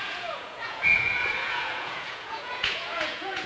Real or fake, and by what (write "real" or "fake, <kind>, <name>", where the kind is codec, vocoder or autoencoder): fake, vocoder, Vocos